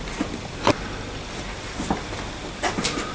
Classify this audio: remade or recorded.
recorded